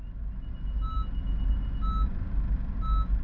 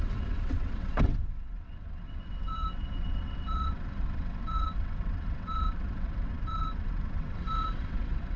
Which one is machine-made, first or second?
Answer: second